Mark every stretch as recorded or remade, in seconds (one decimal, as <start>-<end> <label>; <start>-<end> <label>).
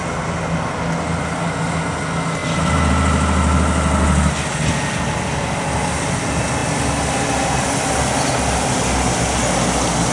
0.0-10.1 recorded